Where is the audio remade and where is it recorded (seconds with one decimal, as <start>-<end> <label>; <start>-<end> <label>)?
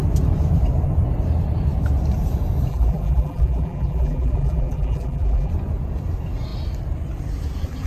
0.0-2.7 recorded; 2.7-5.5 remade; 5.5-7.9 recorded